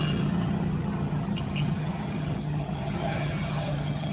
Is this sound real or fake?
fake